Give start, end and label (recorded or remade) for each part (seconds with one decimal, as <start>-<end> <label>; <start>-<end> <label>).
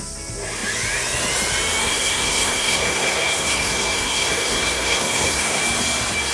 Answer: 0.0-1.8 recorded; 1.8-5.6 remade; 5.6-6.3 recorded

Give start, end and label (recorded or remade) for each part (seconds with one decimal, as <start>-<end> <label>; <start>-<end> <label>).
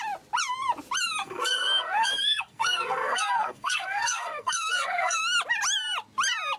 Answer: 0.0-1.2 recorded; 1.2-5.2 remade; 5.2-6.6 recorded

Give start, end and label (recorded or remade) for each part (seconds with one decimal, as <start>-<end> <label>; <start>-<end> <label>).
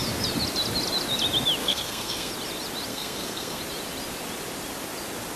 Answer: 0.0-1.6 recorded; 1.6-2.3 remade; 2.3-2.9 recorded; 2.9-3.6 remade; 3.6-5.4 recorded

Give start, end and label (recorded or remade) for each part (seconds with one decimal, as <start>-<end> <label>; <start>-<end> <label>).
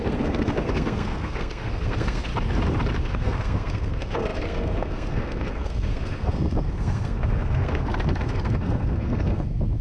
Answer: 0.0-2.3 remade; 2.3-3.0 recorded; 3.0-9.8 remade